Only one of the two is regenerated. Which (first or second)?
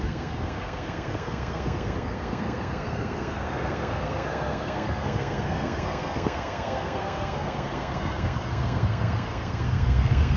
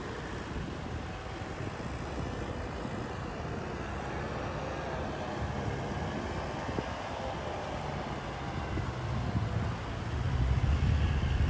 first